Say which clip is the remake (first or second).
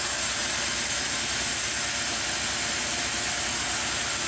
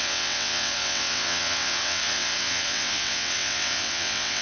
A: second